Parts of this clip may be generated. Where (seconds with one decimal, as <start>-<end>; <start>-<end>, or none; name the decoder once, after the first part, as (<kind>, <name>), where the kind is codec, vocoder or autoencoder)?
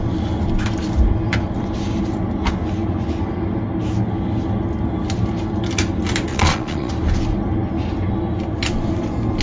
6.3-6.9 (vocoder, Vocos)